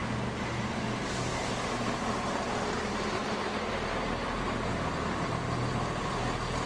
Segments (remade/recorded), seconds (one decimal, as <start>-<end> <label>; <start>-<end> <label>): 0.0-3.2 remade; 3.2-3.7 recorded; 3.7-6.7 remade